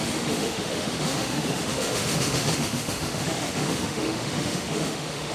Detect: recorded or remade remade